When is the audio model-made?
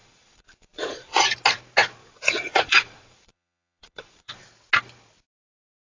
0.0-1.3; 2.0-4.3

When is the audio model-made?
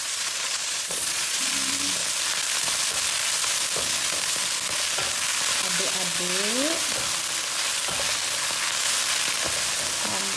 0.0-1.4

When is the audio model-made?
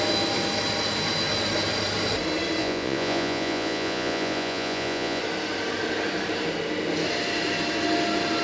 2.6-5.2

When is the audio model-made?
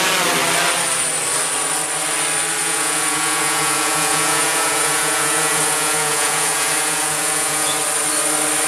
2.6-7.8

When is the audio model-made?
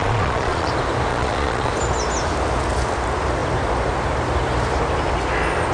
0.0-0.7; 1.1-1.7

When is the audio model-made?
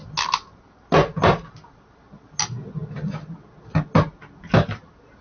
none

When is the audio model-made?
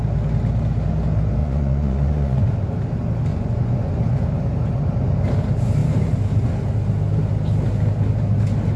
1.4-2.5; 3.3-3.9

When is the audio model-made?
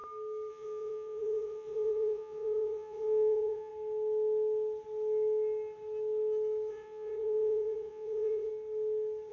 0.5-3.7; 6.7-8.5